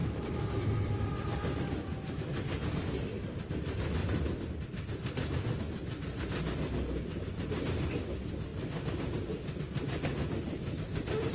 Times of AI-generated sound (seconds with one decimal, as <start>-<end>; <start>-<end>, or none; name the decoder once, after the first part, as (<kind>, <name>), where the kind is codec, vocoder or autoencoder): 4.0-5.6 (vocoder, BigVGAN v2)